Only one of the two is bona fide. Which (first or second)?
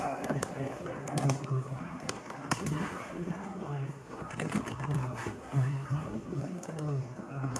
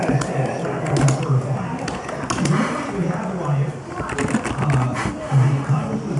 second